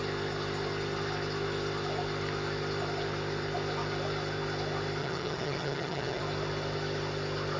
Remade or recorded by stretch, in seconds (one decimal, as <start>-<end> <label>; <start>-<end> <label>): 0.0-5.0 recorded; 5.0-6.2 remade; 6.2-7.6 recorded